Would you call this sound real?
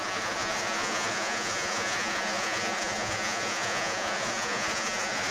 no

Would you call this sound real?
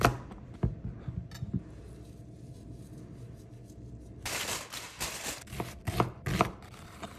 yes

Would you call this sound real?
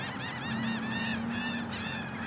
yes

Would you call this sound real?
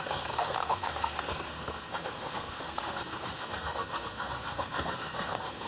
no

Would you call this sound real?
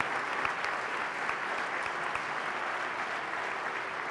yes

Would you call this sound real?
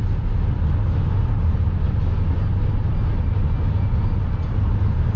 yes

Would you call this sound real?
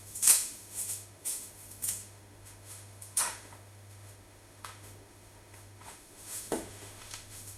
no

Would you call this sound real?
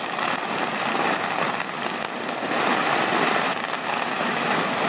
yes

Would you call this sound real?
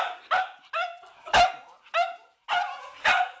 yes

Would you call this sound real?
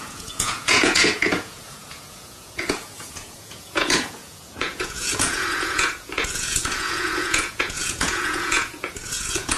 no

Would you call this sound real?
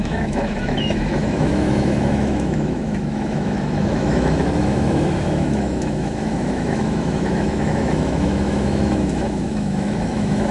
no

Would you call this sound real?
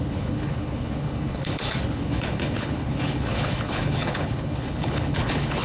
no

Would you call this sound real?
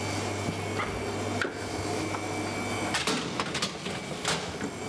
yes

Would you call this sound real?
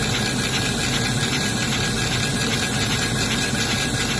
yes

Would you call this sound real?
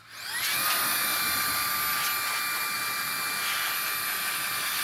yes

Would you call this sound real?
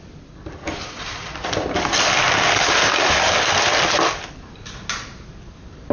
yes